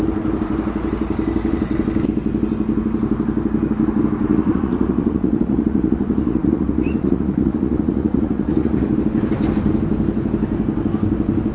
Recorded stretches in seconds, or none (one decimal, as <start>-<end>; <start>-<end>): 0.0-4.3; 8.9-11.5